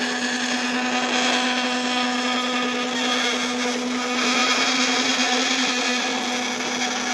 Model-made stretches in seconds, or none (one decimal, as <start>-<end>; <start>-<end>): 4.4-6.2